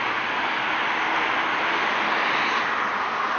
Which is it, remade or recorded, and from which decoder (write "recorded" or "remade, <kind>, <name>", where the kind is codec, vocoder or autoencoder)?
recorded